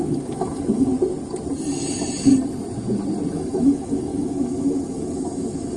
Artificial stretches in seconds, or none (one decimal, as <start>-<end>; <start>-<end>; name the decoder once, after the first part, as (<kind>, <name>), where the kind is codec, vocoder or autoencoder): 0.0-0.9 (autoencoder, DAC-VAE); 1.7-2.3; 3.3-5.8